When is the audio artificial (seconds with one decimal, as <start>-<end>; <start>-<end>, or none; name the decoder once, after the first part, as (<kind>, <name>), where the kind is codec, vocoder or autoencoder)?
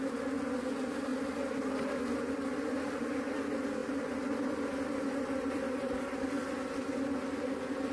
1.1-1.7 (vocoder, BigVGAN v2); 3.8-6.8